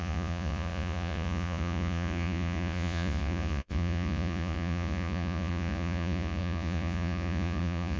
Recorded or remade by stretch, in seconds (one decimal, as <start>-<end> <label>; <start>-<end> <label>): 0.0-8.0 remade